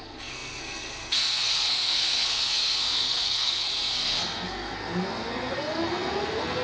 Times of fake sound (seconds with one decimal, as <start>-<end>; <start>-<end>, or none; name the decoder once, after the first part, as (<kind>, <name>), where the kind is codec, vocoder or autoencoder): 0.0-6.6 (codec, SNAC)